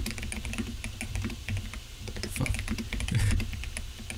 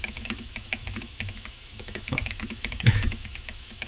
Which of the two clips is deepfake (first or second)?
second